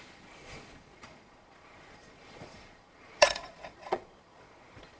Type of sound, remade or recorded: remade